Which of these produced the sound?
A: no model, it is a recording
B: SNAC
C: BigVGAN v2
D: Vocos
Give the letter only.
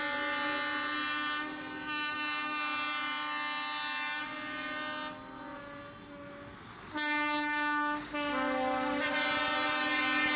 A